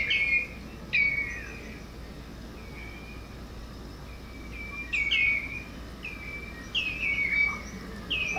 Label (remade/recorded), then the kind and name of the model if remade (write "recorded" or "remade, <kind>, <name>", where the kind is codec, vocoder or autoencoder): recorded